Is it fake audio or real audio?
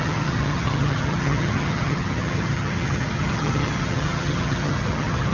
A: fake